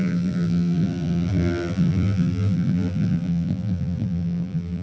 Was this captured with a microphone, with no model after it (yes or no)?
no